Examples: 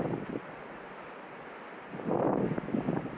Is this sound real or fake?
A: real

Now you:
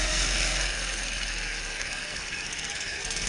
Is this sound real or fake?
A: fake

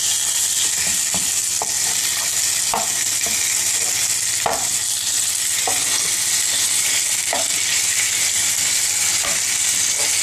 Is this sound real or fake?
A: real